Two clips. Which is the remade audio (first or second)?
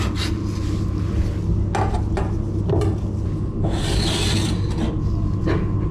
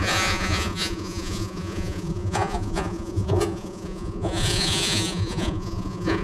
second